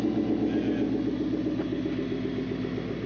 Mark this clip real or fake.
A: real